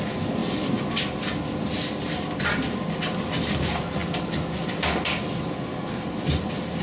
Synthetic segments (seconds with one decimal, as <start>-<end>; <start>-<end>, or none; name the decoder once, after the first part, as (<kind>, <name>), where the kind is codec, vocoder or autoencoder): none